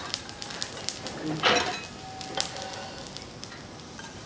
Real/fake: real